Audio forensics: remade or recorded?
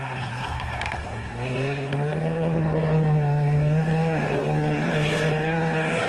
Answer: remade